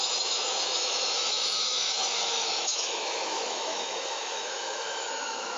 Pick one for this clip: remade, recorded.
remade